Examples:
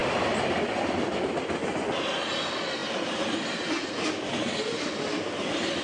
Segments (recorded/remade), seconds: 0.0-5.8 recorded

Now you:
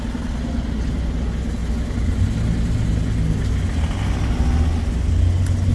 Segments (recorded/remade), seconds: 0.0-5.7 recorded

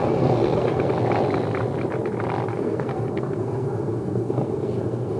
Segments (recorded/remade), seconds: 0.0-0.9 remade; 0.9-2.5 recorded; 2.5-5.2 remade

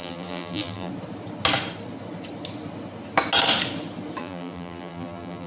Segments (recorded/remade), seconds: 0.0-0.9 remade; 0.9-4.2 recorded; 4.2-5.5 remade

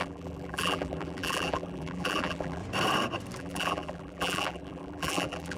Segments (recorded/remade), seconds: 0.0-2.6 remade; 2.6-3.4 recorded; 3.4-5.6 remade

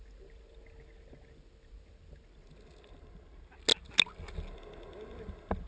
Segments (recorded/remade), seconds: 0.0-5.7 recorded

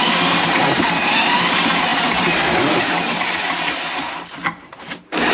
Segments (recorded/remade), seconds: 0.0-5.3 remade